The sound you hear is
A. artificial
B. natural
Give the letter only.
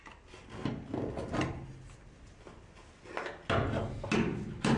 B